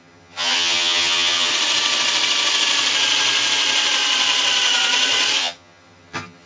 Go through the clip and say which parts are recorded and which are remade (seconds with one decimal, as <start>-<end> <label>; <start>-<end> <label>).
0.0-1.5 remade; 1.5-5.4 recorded; 5.4-6.5 remade

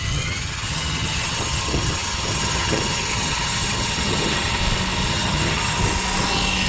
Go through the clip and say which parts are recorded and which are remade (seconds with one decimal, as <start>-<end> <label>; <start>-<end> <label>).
0.0-4.6 remade; 4.6-5.1 recorded; 5.1-5.8 remade; 5.8-6.7 recorded

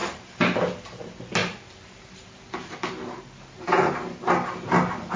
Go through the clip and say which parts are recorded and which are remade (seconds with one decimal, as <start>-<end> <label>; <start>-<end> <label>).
0.0-5.2 recorded

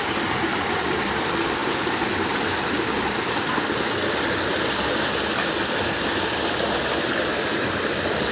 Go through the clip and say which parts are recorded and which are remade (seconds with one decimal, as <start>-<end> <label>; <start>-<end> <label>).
0.0-8.3 recorded

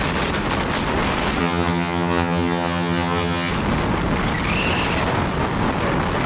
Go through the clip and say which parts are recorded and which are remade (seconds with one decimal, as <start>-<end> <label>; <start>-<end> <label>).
0.0-1.4 recorded; 1.4-3.5 remade; 3.5-6.3 recorded

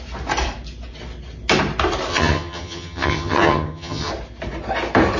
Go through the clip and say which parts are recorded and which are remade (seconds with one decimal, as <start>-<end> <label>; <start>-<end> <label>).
0.0-2.1 recorded; 2.1-4.1 remade; 4.1-5.2 recorded

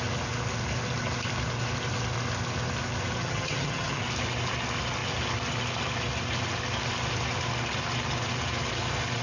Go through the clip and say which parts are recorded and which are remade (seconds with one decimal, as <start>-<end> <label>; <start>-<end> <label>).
0.0-3.2 recorded; 3.2-4.0 remade; 4.0-9.2 recorded

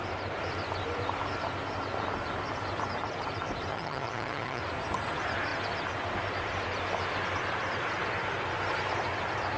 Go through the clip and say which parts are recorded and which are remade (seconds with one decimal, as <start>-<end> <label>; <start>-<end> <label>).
0.0-3.7 recorded; 3.7-4.6 remade; 4.6-9.6 recorded